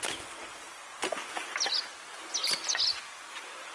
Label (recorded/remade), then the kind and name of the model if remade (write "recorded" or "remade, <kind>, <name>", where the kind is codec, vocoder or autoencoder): recorded